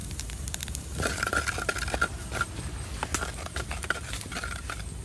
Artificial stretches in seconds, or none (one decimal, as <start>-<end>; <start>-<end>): 0.0-1.4